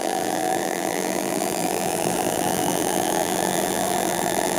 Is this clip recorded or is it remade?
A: remade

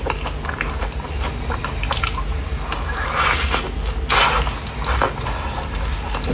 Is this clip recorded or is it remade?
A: recorded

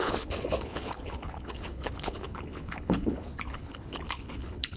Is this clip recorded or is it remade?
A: remade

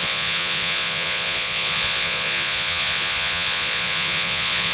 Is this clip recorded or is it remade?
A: remade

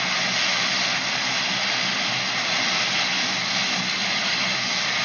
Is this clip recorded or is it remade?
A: recorded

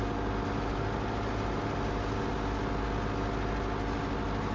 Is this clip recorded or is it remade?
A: recorded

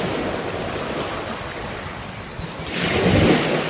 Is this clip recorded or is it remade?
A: recorded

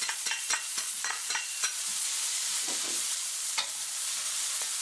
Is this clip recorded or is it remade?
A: remade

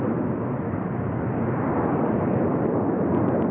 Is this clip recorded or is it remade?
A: remade